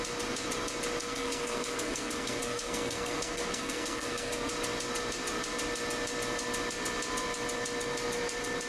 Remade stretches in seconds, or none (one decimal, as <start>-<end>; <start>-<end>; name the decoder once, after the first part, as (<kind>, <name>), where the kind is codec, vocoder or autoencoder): 1.0-4.5 (codec, SNAC)